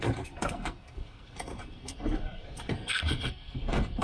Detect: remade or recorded remade